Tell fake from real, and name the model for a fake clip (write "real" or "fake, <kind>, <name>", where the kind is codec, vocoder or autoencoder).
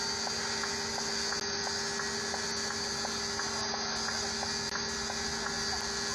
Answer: real